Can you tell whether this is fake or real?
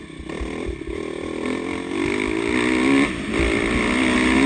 real